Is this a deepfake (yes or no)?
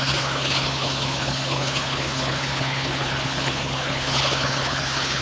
yes